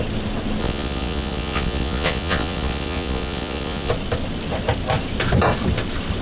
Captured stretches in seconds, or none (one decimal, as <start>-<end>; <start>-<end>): 0.0-0.6; 3.9-6.2